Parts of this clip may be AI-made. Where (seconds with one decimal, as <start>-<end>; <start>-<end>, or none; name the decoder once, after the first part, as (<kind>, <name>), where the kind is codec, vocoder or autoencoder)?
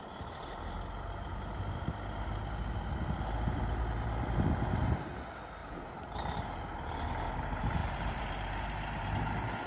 5.6-6.6 (vocoder, BigVGAN v2); 7.8-9.1